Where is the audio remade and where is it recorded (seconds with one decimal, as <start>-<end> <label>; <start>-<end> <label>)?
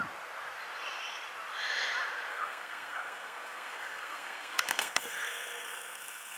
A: 0.0-2.3 recorded; 2.3-6.4 remade